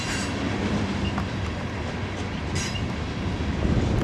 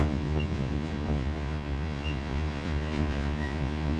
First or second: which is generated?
second